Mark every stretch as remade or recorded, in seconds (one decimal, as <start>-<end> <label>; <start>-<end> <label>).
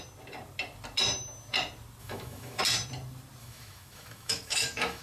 0.0-2.0 recorded; 2.0-2.6 remade; 2.6-3.4 recorded; 3.4-5.0 remade